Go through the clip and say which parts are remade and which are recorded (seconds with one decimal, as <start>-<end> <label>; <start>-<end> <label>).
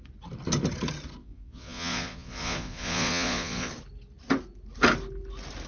0.0-1.2 recorded; 1.2-3.7 remade; 3.7-5.7 recorded